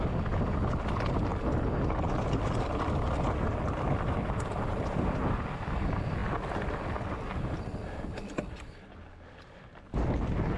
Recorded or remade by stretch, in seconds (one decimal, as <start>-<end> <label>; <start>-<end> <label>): 0.0-10.6 recorded